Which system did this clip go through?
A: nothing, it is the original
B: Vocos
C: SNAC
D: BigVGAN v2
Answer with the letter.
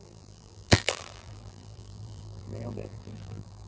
D